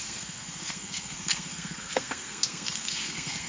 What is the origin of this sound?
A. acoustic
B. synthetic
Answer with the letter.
B